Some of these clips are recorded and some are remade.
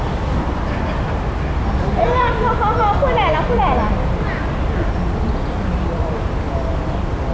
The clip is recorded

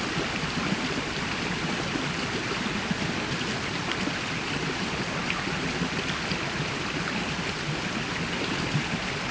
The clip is recorded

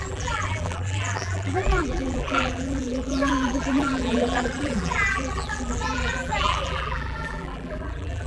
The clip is remade